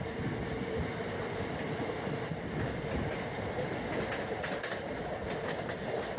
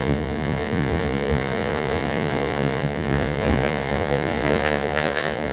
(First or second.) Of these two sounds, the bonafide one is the first